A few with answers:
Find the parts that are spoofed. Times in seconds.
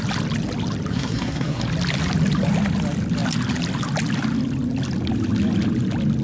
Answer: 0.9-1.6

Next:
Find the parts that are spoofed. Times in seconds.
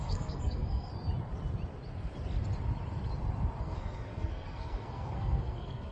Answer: 0.0-0.9; 3.6-5.9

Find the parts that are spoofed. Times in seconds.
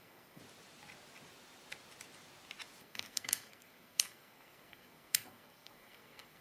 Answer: 0.0-0.4; 2.8-6.4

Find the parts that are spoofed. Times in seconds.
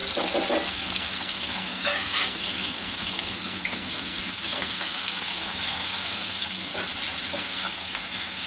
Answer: 0.7-6.7; 7.2-8.5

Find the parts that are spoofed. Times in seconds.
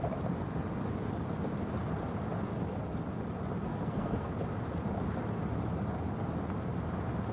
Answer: 3.7-4.3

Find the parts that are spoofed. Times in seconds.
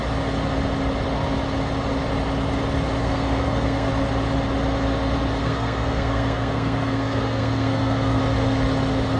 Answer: 3.0-3.9; 5.4-8.2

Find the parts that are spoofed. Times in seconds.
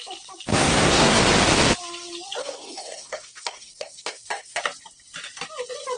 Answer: 0.5-1.2; 2.4-4.6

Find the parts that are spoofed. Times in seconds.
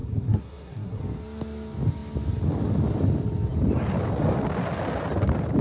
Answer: 0.0-1.0